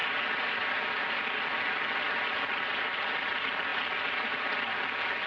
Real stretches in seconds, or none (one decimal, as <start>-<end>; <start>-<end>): 0.0-5.3